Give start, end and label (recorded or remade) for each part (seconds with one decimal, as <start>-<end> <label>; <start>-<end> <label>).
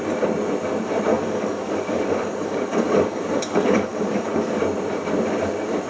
0.0-1.1 recorded; 1.1-4.6 remade; 4.6-5.9 recorded